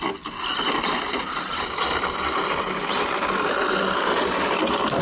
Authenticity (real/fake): real